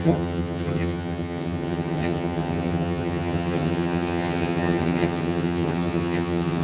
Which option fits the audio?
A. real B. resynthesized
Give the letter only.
B